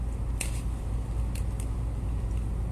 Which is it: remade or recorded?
recorded